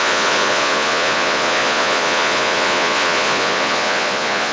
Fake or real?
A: fake